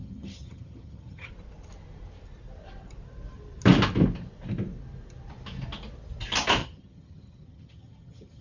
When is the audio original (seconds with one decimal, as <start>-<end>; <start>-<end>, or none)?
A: 1.3-6.6